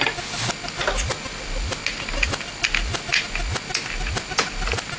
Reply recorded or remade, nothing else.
recorded